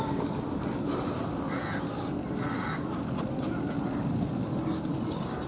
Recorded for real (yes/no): yes